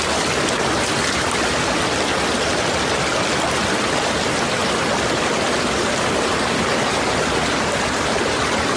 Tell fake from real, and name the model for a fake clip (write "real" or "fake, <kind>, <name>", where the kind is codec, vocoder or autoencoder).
real